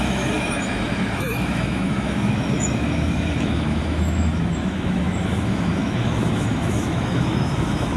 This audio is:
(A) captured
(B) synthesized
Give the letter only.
B